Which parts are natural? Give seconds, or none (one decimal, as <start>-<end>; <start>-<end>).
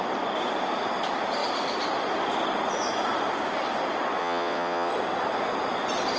0.0-4.2; 4.9-6.2